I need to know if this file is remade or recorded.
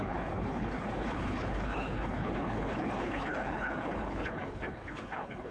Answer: remade